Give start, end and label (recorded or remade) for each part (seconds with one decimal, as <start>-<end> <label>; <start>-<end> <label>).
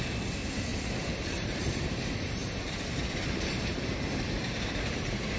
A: 0.0-0.7 recorded; 0.7-3.9 remade; 3.9-4.4 recorded; 4.4-5.4 remade